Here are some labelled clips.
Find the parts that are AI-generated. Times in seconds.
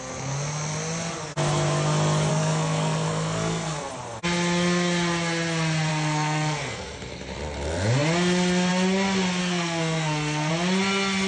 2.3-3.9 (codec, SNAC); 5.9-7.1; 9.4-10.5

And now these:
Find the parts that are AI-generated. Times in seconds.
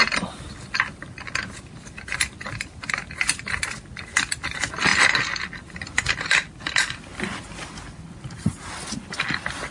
none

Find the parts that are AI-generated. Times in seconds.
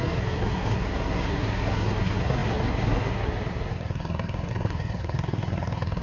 0.0-6.0 (codec, SNAC)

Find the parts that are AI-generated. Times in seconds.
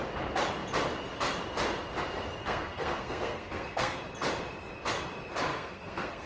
2.4-4.0 (codec, SNAC); 5.5-6.3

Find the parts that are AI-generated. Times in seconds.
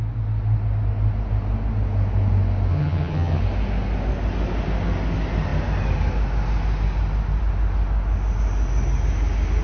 2.7-3.4 (vocoder, HiFi-GAN)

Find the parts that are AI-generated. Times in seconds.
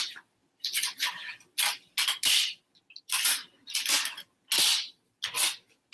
none